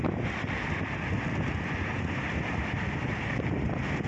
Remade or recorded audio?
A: recorded